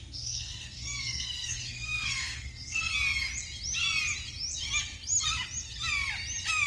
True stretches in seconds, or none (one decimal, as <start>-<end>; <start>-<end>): 2.9-6.7